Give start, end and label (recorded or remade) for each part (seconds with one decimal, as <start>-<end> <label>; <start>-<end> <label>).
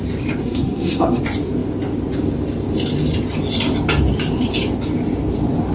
0.0-0.4 recorded; 0.4-1.2 remade; 1.2-5.7 recorded